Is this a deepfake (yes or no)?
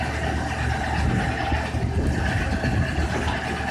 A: no